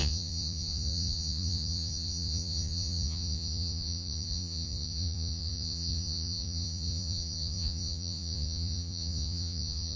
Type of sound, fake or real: fake